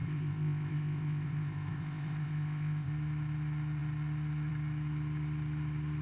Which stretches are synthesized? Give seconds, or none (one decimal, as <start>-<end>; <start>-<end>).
0.0-2.9